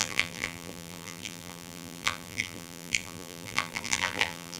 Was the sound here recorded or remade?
remade